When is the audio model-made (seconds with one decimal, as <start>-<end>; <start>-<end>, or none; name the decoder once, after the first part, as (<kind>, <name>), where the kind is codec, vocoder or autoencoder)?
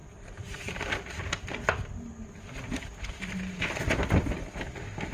none